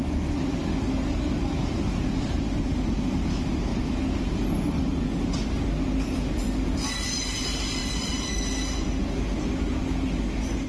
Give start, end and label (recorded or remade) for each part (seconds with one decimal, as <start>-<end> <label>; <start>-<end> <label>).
0.0-7.8 recorded; 7.8-8.4 remade; 8.4-10.7 recorded